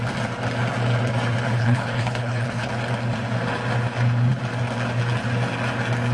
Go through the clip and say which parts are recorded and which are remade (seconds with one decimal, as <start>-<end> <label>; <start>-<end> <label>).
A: 0.0-1.6 recorded; 1.6-2.7 remade; 2.7-6.1 recorded